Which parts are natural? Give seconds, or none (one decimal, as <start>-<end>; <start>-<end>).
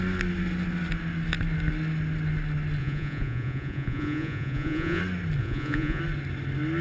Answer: 0.0-2.8; 5.0-5.4; 6.0-6.8